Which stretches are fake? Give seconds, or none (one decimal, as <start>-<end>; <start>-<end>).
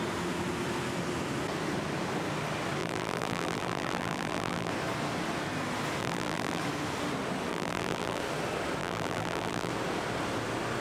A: 2.8-4.7; 6.0-6.6; 7.5-8.2; 8.8-9.7